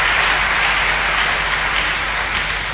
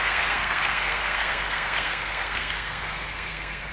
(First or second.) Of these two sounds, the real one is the first